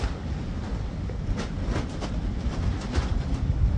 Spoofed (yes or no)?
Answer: no